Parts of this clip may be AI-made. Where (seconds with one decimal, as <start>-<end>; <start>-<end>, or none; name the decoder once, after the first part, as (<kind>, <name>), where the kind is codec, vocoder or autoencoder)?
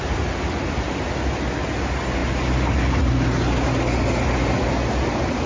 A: none